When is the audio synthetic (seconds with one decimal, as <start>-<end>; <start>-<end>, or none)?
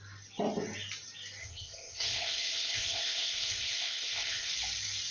1.4-4.5